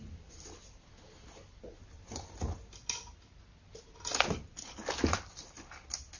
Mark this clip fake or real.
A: real